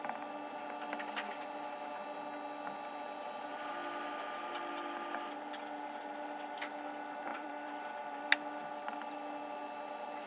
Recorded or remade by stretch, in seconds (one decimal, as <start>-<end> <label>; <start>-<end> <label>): 0.0-7.3 recorded; 7.3-8.2 remade; 8.2-10.3 recorded